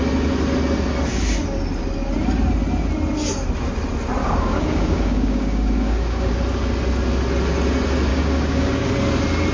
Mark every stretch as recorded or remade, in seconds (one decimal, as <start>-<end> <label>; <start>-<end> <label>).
0.0-4.2 recorded; 4.2-6.3 remade; 6.3-8.1 recorded; 8.1-8.9 remade; 8.9-9.5 recorded